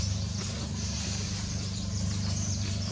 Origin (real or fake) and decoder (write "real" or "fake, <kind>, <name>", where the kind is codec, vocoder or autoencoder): real